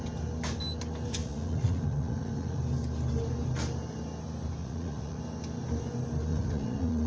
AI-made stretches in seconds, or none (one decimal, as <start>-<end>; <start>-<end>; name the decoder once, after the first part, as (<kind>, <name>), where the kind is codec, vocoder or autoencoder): 1.2-2.6 (vocoder, Vocos); 4.6-5.2; 6.3-7.1